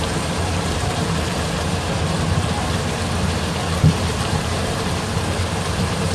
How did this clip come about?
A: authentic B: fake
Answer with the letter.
B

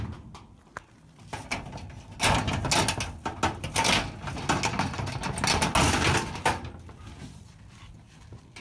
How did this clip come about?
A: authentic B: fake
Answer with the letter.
A